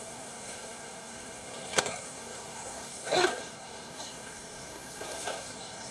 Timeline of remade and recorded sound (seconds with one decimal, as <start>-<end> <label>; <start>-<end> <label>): 0.0-5.9 remade